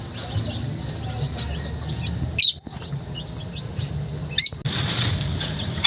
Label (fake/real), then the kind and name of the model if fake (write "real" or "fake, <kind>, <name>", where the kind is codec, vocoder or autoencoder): real